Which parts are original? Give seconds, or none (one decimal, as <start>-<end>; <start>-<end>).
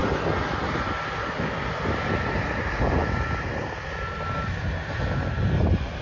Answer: 0.0-6.0